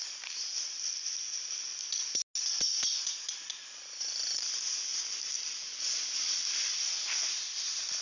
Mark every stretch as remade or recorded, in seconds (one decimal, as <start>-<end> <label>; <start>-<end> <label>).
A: 0.0-8.0 recorded